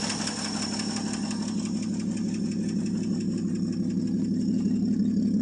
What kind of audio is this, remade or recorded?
recorded